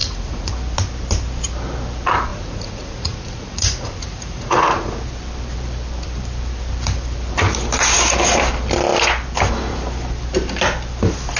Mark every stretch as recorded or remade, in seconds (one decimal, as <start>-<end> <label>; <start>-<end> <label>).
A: 0.0-0.5 remade; 0.5-2.3 recorded; 2.3-5.0 remade; 5.0-11.4 recorded